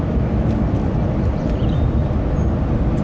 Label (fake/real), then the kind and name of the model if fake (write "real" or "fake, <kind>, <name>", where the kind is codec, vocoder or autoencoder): real